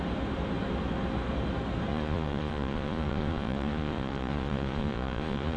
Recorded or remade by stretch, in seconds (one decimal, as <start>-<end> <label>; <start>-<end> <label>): 0.0-1.9 recorded; 1.9-5.6 remade